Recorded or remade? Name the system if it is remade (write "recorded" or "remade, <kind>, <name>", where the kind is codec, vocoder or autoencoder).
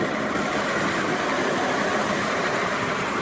recorded